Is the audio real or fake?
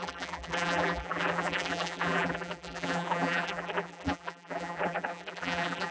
fake